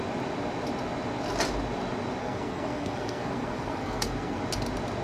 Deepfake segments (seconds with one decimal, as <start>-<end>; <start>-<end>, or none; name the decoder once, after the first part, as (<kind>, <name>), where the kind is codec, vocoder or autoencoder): 2.2-4.4 (codec, SNAC)